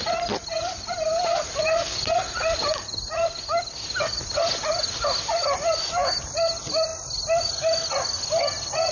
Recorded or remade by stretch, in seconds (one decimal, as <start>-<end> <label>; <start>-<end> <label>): 0.0-8.9 recorded